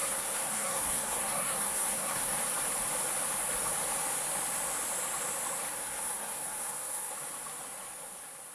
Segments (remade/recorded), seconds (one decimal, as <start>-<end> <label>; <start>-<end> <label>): 0.0-2.4 remade; 2.4-5.7 recorded; 5.7-7.1 remade; 7.1-8.5 recorded